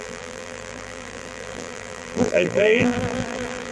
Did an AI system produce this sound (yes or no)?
yes